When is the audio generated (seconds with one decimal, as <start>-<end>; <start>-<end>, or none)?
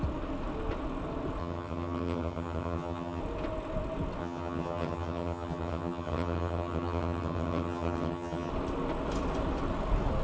1.4-3.2; 4.2-8.5